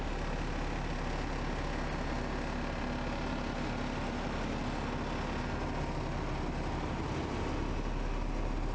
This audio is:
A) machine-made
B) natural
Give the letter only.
B